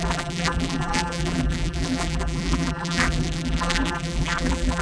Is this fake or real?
fake